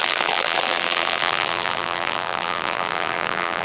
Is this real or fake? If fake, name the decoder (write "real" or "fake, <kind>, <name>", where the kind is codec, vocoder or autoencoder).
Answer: fake, vocoder, BigVGAN v2